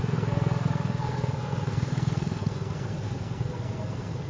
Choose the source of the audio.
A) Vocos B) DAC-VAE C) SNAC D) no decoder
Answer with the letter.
C